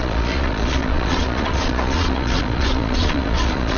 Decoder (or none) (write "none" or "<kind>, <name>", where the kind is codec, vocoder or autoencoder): vocoder, Vocos